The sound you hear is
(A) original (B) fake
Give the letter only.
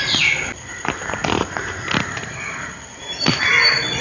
A